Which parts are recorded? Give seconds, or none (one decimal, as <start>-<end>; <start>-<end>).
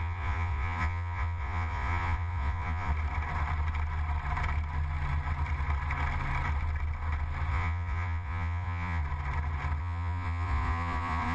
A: 2.9-7.5; 9.0-9.8